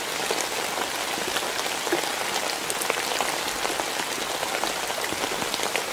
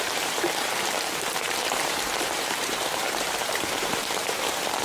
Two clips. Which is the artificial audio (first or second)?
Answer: second